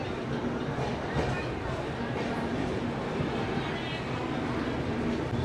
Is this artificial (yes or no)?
no